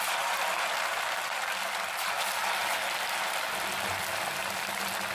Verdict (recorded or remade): remade